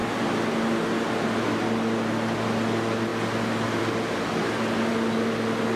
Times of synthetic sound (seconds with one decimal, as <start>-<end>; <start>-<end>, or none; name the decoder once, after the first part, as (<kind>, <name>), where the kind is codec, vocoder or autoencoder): none